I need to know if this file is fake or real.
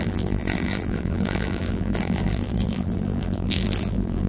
fake